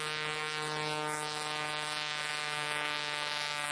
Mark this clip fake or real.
real